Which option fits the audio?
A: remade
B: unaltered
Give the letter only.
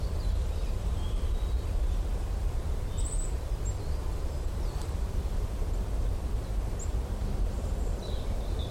A